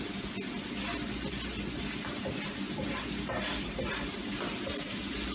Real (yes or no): yes